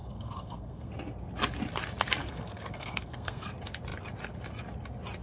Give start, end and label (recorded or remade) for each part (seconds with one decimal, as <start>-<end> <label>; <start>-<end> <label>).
0.0-0.9 remade; 0.9-2.2 recorded; 2.2-3.5 remade; 3.5-5.2 recorded